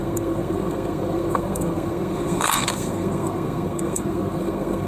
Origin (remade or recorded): remade